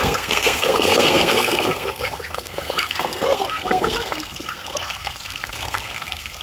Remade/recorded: remade